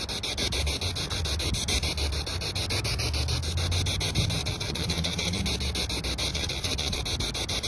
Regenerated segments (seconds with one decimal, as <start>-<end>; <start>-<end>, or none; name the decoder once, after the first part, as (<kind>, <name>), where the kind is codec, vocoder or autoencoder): 4.4-5.4 (vocoder, WaveNeXt); 6.3-7.0